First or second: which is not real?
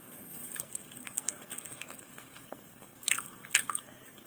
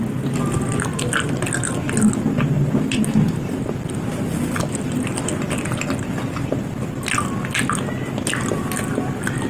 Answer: first